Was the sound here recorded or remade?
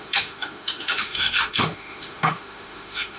remade